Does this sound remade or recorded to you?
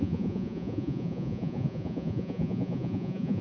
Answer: remade